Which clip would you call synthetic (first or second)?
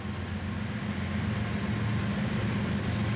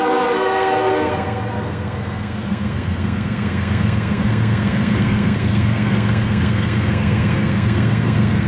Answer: second